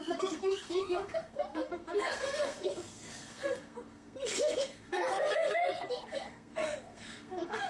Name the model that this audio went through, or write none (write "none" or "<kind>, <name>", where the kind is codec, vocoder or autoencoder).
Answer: codec, SNAC